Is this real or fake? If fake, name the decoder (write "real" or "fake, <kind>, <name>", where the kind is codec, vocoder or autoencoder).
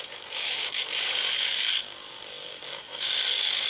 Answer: fake, codec, DAC